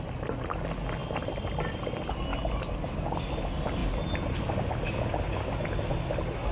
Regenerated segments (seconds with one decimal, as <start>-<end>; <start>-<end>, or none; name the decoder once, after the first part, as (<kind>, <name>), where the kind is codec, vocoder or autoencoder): none